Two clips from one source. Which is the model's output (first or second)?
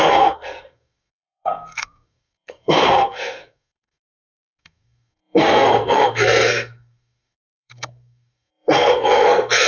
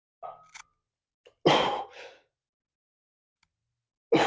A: first